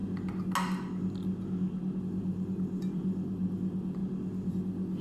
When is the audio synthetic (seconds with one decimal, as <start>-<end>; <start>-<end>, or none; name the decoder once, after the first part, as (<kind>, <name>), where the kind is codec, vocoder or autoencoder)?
2.0-4.0 (vocoder, BigVGAN v2); 4.5-5.0